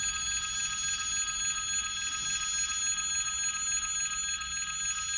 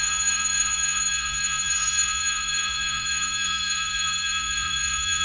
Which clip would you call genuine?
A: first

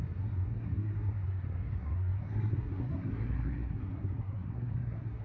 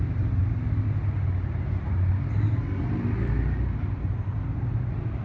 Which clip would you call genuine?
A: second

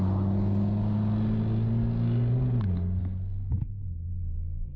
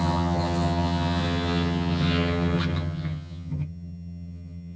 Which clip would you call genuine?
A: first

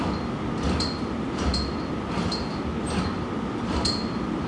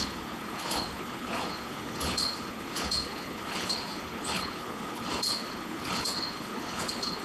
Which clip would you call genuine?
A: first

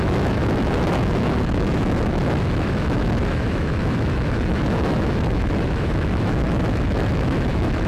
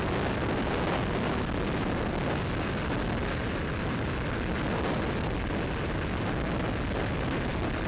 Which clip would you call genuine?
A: second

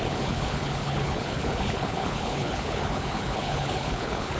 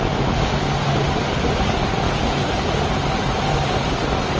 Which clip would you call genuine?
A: second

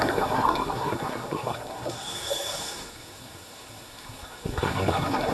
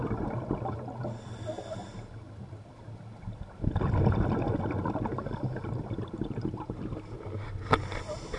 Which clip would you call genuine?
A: second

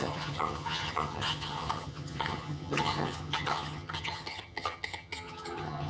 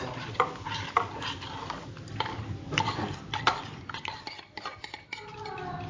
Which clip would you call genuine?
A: second